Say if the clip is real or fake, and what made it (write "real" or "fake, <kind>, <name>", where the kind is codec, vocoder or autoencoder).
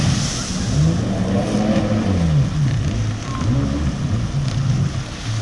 real